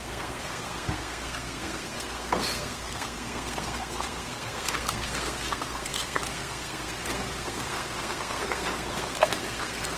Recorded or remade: remade